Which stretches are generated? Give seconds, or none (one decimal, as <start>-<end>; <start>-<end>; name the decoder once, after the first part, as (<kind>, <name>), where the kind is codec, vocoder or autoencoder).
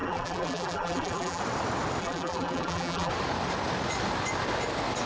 0.0-1.4 (vocoder, BigVGAN v2); 2.0-3.1